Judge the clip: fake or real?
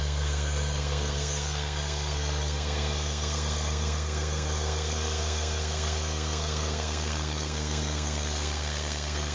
fake